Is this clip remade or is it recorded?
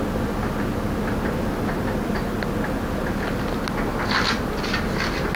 recorded